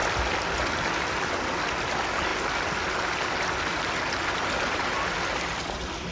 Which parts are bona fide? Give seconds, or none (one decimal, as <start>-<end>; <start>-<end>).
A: 0.0-6.1